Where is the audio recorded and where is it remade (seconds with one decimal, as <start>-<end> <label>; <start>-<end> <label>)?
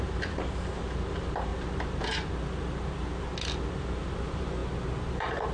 0.0-1.5 remade; 1.5-3.8 recorded; 3.8-4.6 remade; 4.6-5.1 recorded; 5.1-5.5 remade